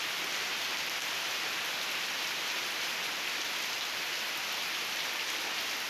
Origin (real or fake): fake